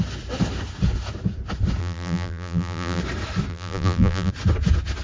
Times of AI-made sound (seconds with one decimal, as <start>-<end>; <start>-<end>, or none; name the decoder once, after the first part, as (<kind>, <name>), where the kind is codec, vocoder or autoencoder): 1.8-3.0 (vocoder, BigVGAN v2); 3.5-4.3